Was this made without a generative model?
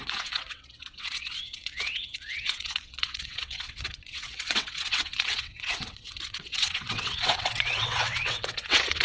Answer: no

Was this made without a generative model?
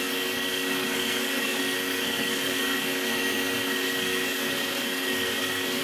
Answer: no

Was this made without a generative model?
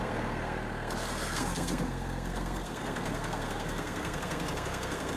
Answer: no